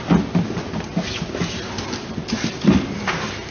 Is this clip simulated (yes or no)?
no